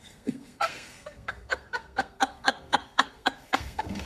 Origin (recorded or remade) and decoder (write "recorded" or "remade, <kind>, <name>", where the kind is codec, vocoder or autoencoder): remade, codec, SNAC